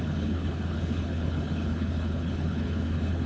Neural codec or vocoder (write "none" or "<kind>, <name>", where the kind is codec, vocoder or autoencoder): codec, HILCodec